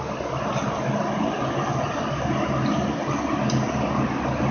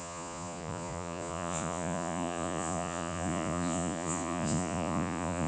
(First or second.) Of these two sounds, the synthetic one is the second